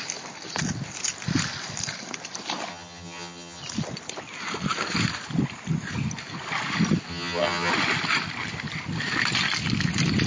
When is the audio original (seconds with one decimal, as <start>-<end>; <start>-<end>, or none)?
0.0-2.7; 3.6-7.1; 7.7-10.3